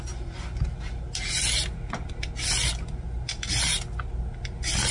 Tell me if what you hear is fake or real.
real